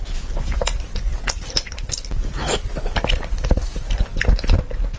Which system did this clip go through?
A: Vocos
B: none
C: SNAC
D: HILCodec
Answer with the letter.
B